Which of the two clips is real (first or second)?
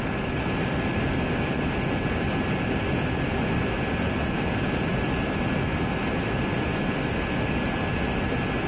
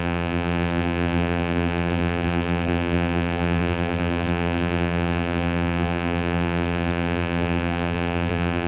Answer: first